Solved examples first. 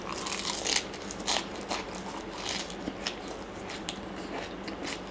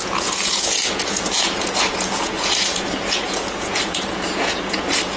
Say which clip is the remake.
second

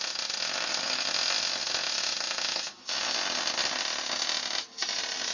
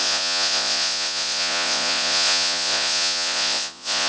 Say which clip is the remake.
second